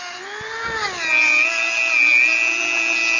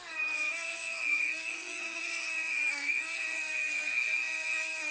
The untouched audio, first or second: first